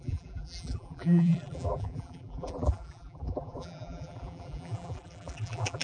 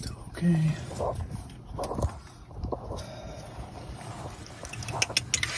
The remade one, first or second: first